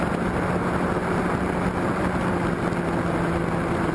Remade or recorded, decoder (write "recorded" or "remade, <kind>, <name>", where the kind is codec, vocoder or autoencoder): recorded